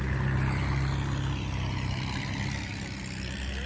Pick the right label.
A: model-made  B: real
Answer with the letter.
B